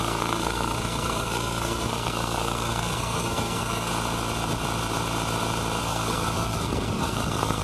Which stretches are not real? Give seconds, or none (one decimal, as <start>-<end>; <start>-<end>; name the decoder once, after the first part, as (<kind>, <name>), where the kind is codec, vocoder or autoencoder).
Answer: 0.0-3.9 (codec, SNAC); 5.8-7.6